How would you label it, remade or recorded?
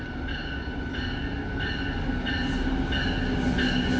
recorded